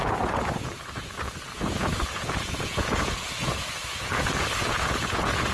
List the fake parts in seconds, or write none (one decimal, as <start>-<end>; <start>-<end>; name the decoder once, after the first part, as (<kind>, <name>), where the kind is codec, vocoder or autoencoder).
0.0-5.5 (vocoder, Vocos)